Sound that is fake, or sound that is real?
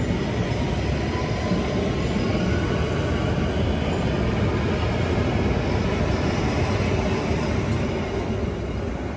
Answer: real